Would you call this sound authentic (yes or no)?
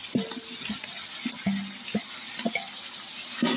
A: yes